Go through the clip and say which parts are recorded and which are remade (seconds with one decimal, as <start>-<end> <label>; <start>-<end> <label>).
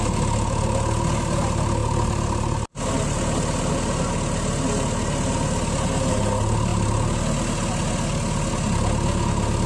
0.0-9.7 recorded